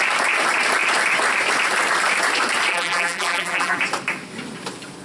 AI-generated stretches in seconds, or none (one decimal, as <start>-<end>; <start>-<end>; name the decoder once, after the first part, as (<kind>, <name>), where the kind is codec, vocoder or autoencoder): 2.7-3.8 (vocoder, BigVGAN v2)